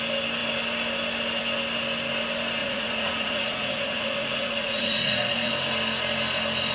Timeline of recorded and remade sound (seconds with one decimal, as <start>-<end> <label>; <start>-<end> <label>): 0.0-2.6 recorded; 2.6-5.5 remade; 5.5-6.7 recorded